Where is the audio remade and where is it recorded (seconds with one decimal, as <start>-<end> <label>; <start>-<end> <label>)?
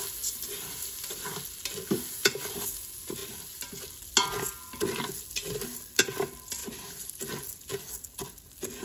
0.0-6.6 recorded; 6.6-7.2 remade; 7.2-8.8 recorded